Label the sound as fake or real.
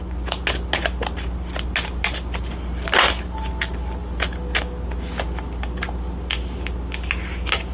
real